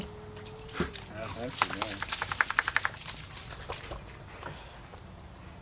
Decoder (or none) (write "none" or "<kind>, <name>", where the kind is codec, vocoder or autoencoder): none